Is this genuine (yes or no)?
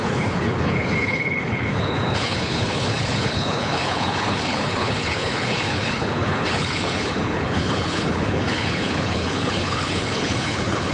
no